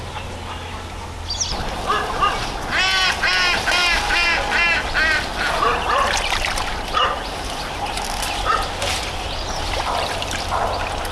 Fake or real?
real